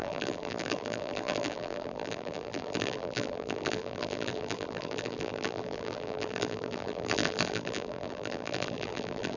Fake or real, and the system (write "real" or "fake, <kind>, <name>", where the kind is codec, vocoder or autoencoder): fake, vocoder, BigVGAN v2